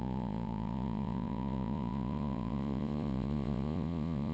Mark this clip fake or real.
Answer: fake